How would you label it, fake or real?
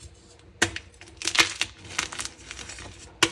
real